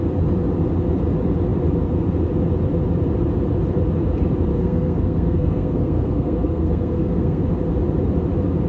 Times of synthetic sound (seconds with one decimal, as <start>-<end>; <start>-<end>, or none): 4.5-7.4